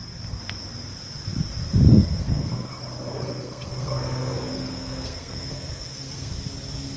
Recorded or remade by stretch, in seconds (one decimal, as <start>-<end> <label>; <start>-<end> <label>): 0.0-1.9 recorded; 1.9-2.7 remade; 2.7-3.1 recorded; 3.1-6.3 remade; 6.3-7.0 recorded